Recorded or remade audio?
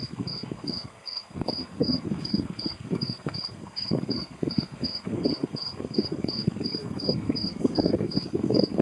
remade